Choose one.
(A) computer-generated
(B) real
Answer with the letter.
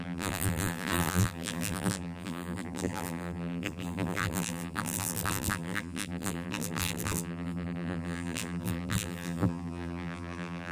A